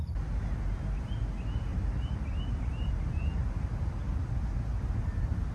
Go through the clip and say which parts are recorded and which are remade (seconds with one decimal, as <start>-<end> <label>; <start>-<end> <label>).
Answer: 0.0-1.7 recorded; 1.7-2.9 remade; 2.9-5.5 recorded